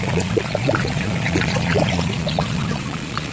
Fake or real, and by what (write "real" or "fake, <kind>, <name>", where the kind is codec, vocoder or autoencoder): fake, vocoder, Vocos